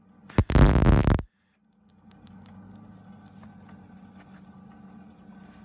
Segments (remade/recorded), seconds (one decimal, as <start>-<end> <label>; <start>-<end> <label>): 0.0-5.6 recorded